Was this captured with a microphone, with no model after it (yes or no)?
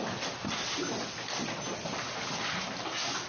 yes